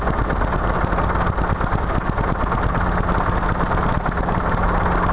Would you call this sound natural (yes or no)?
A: yes